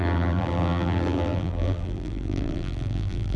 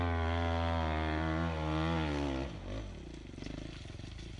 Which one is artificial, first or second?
first